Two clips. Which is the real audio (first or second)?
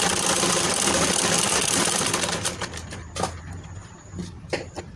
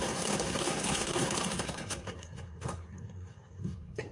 first